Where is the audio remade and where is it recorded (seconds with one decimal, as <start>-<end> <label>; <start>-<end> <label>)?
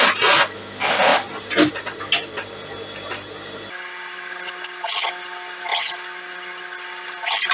0.0-7.5 recorded